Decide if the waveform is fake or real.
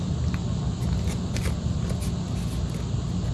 real